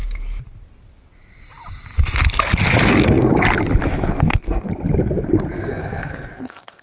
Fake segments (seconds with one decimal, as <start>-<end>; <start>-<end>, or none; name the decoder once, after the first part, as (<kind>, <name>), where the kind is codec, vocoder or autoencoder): 2.9-3.3 (codec, SNAC); 4.1-4.7; 5.7-6.8